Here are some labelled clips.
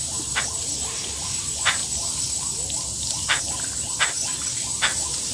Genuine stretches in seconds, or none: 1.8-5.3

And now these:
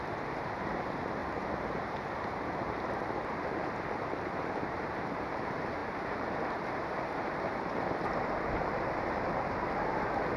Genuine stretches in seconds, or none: none

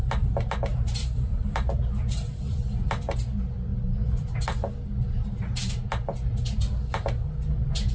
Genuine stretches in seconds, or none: 0.0-0.7; 2.7-7.9

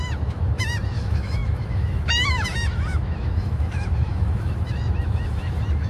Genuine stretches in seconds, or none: none

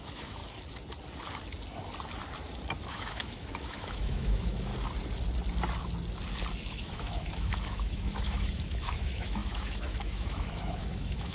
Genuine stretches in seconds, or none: 0.4-2.9; 4.7-6.7